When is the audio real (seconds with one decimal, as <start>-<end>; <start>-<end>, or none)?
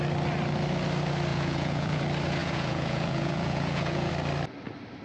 0.0-1.3; 2.0-2.4; 4.1-5.0